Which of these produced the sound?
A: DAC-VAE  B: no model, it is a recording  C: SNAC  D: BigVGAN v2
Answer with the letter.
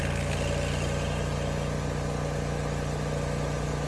B